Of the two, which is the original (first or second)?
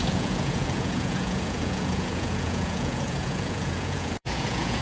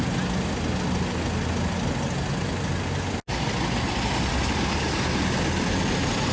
second